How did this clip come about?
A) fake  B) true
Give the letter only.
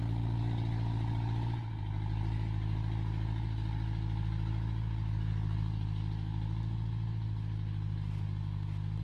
B